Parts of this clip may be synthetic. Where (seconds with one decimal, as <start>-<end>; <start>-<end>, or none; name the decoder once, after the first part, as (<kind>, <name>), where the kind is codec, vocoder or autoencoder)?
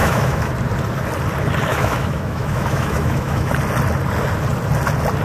0.0-0.5 (autoencoder, DAC-VAE); 1.7-3.5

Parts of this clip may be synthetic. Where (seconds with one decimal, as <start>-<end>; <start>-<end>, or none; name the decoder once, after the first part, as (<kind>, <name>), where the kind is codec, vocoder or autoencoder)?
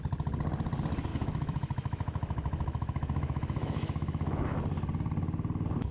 1.1-4.6 (autoencoder, DAC-VAE)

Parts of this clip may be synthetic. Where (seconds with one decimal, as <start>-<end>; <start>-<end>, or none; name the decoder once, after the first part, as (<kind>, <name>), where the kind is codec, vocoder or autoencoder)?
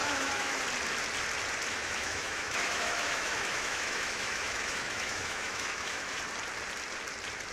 0.0-0.6 (autoencoder, DAC-VAE); 1.7-6.2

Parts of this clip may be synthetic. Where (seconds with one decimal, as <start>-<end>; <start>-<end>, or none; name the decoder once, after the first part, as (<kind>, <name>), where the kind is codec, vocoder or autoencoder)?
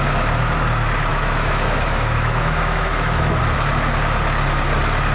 1.1-3.4 (autoencoder, DAC-VAE)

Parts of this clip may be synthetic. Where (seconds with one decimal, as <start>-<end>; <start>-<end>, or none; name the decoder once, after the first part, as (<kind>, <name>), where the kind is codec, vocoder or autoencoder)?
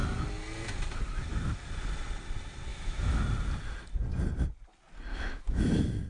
2.7-3.2 (autoencoder, DAC-VAE); 5.1-5.6